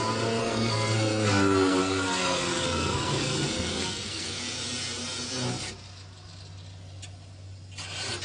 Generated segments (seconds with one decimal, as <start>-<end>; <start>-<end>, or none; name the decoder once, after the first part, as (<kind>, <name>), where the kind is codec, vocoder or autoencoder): 0.4-4.4 (codec, SNAC)